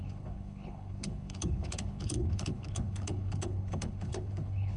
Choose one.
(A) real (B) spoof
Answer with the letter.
B